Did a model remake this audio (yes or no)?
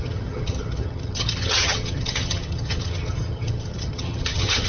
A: yes